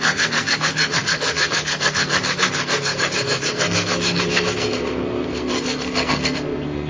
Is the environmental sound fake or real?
fake